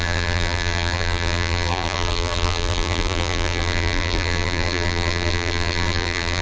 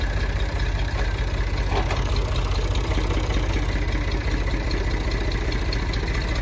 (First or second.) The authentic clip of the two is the second